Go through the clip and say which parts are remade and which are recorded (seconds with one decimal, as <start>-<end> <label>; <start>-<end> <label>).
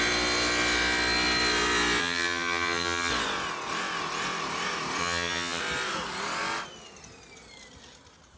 0.0-2.0 recorded; 2.0-3.1 remade; 3.1-5.0 recorded; 5.0-5.6 remade; 5.6-8.4 recorded